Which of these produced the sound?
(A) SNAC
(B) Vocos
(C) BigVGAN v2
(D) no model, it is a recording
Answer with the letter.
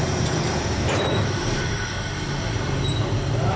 C